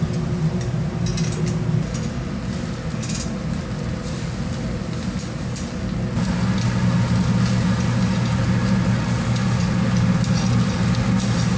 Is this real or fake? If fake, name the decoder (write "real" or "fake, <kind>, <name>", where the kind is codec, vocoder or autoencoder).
real